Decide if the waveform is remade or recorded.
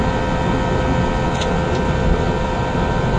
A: recorded